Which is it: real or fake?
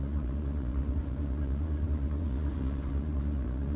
fake